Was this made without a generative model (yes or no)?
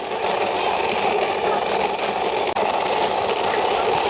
no